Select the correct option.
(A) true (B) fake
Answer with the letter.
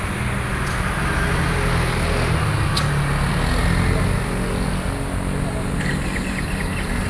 A